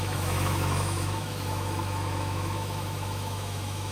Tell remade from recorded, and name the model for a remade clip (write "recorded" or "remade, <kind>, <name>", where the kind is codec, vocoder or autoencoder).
remade, autoencoder, DAC-VAE